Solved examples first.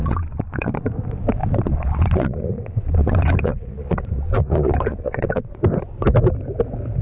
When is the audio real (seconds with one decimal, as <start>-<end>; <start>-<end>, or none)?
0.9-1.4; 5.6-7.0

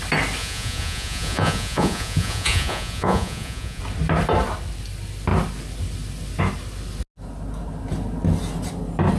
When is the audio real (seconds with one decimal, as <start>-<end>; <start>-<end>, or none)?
0.0-0.4; 3.8-9.2

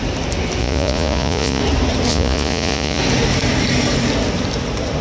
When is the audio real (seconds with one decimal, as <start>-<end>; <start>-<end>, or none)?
0.0-0.6; 1.6-2.1; 3.0-5.0

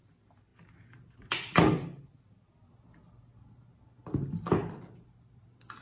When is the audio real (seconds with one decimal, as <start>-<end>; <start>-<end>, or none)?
0.0-5.8

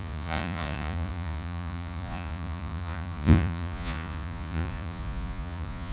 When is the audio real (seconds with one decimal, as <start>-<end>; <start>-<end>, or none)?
none

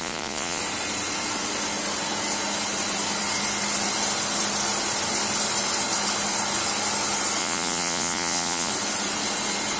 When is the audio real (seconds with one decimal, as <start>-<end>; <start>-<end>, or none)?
0.6-7.4; 8.7-9.8

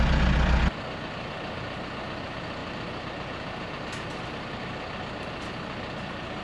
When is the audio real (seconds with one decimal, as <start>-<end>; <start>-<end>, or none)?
0.0-6.4